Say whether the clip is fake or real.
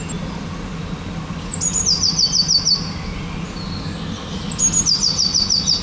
real